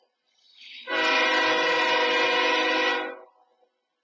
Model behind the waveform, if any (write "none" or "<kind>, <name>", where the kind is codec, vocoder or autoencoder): none